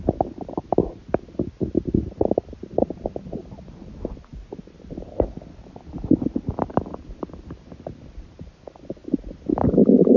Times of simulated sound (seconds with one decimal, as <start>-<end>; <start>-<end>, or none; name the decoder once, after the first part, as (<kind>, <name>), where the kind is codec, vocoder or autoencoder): none